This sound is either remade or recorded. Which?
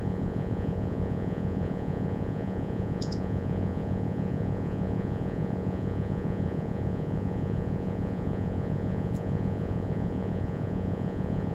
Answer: remade